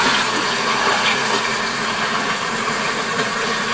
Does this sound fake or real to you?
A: fake